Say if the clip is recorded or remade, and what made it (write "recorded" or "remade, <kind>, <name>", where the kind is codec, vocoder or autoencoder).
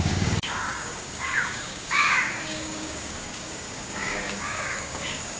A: remade, codec, DAC